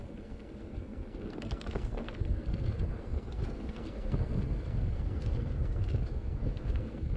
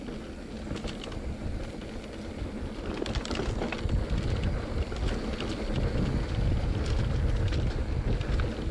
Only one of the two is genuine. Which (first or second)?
second